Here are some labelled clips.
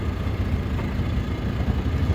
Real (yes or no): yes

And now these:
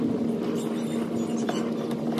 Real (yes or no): yes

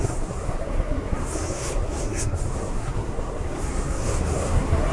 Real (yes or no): no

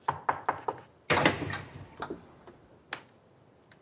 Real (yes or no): yes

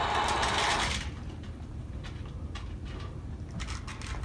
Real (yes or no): yes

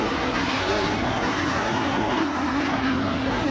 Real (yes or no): no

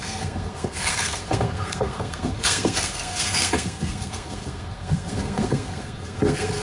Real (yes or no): no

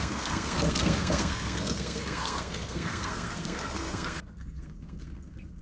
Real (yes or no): no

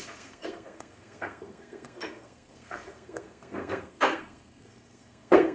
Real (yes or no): no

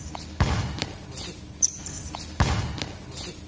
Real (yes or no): yes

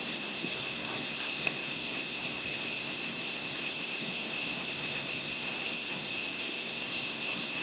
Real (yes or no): no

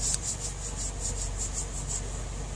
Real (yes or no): yes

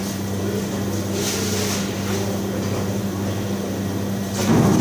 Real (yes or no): yes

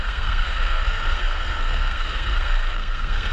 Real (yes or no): no